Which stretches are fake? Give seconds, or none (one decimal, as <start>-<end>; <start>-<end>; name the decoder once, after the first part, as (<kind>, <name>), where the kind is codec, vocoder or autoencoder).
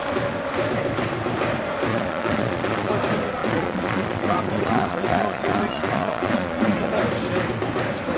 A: 1.9-2.9 (vocoder, Vocos); 3.4-6.9